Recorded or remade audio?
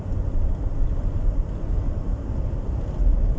recorded